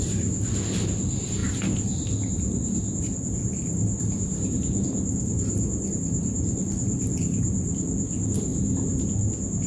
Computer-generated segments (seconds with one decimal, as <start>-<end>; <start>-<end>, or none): none